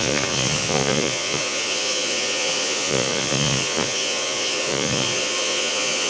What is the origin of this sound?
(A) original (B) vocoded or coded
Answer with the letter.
B